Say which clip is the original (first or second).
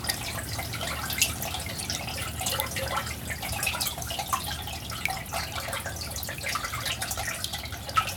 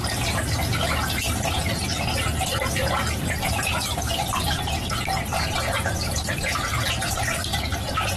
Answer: first